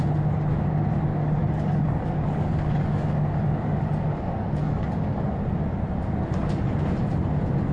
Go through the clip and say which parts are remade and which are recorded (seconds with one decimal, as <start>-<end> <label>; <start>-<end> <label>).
0.0-1.1 recorded; 1.1-5.3 remade; 5.3-7.7 recorded